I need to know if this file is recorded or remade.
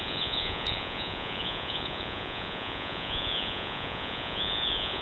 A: remade